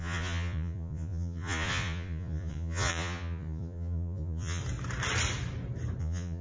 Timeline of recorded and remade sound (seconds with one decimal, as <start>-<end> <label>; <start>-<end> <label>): 0.0-4.6 remade; 4.6-6.0 recorded; 6.0-6.4 remade